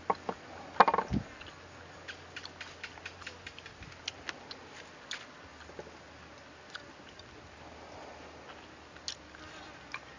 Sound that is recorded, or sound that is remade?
recorded